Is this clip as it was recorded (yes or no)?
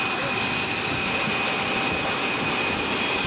yes